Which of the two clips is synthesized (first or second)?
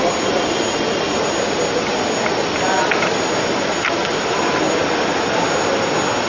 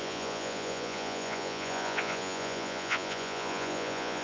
second